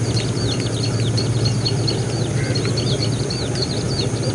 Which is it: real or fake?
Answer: real